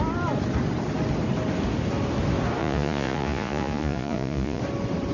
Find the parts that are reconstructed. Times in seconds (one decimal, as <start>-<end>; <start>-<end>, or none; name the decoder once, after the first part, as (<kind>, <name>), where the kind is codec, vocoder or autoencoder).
2.6-4.6 (vocoder, Vocos)